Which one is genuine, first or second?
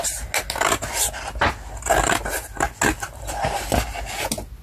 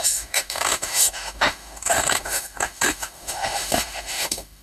first